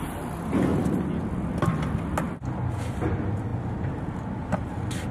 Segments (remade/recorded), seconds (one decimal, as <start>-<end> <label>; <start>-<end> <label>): 0.0-5.1 recorded